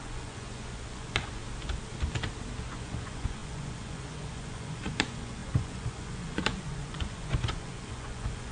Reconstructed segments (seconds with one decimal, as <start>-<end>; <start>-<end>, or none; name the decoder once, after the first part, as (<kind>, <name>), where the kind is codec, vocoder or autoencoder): 0.0-1.4 (vocoder, Vocos); 2.6-8.5